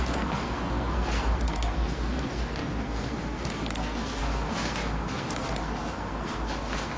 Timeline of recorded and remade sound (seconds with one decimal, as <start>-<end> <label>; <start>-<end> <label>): 0.0-7.0 remade